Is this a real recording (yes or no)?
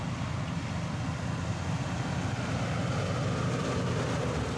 yes